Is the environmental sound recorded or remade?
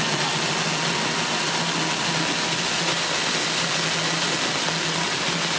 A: recorded